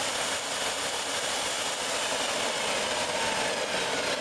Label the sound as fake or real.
real